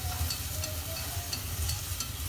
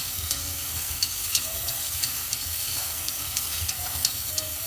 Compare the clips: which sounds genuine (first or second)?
first